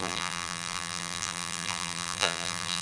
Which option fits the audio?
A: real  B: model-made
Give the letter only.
B